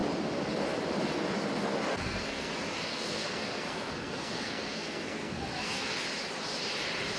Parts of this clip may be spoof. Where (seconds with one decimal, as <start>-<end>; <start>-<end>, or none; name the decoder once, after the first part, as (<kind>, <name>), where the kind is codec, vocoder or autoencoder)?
1.9-2.5 (codec, SNAC); 2.9-6.0